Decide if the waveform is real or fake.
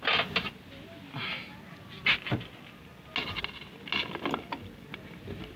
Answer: real